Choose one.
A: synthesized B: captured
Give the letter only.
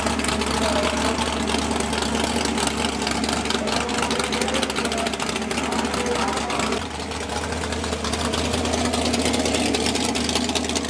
B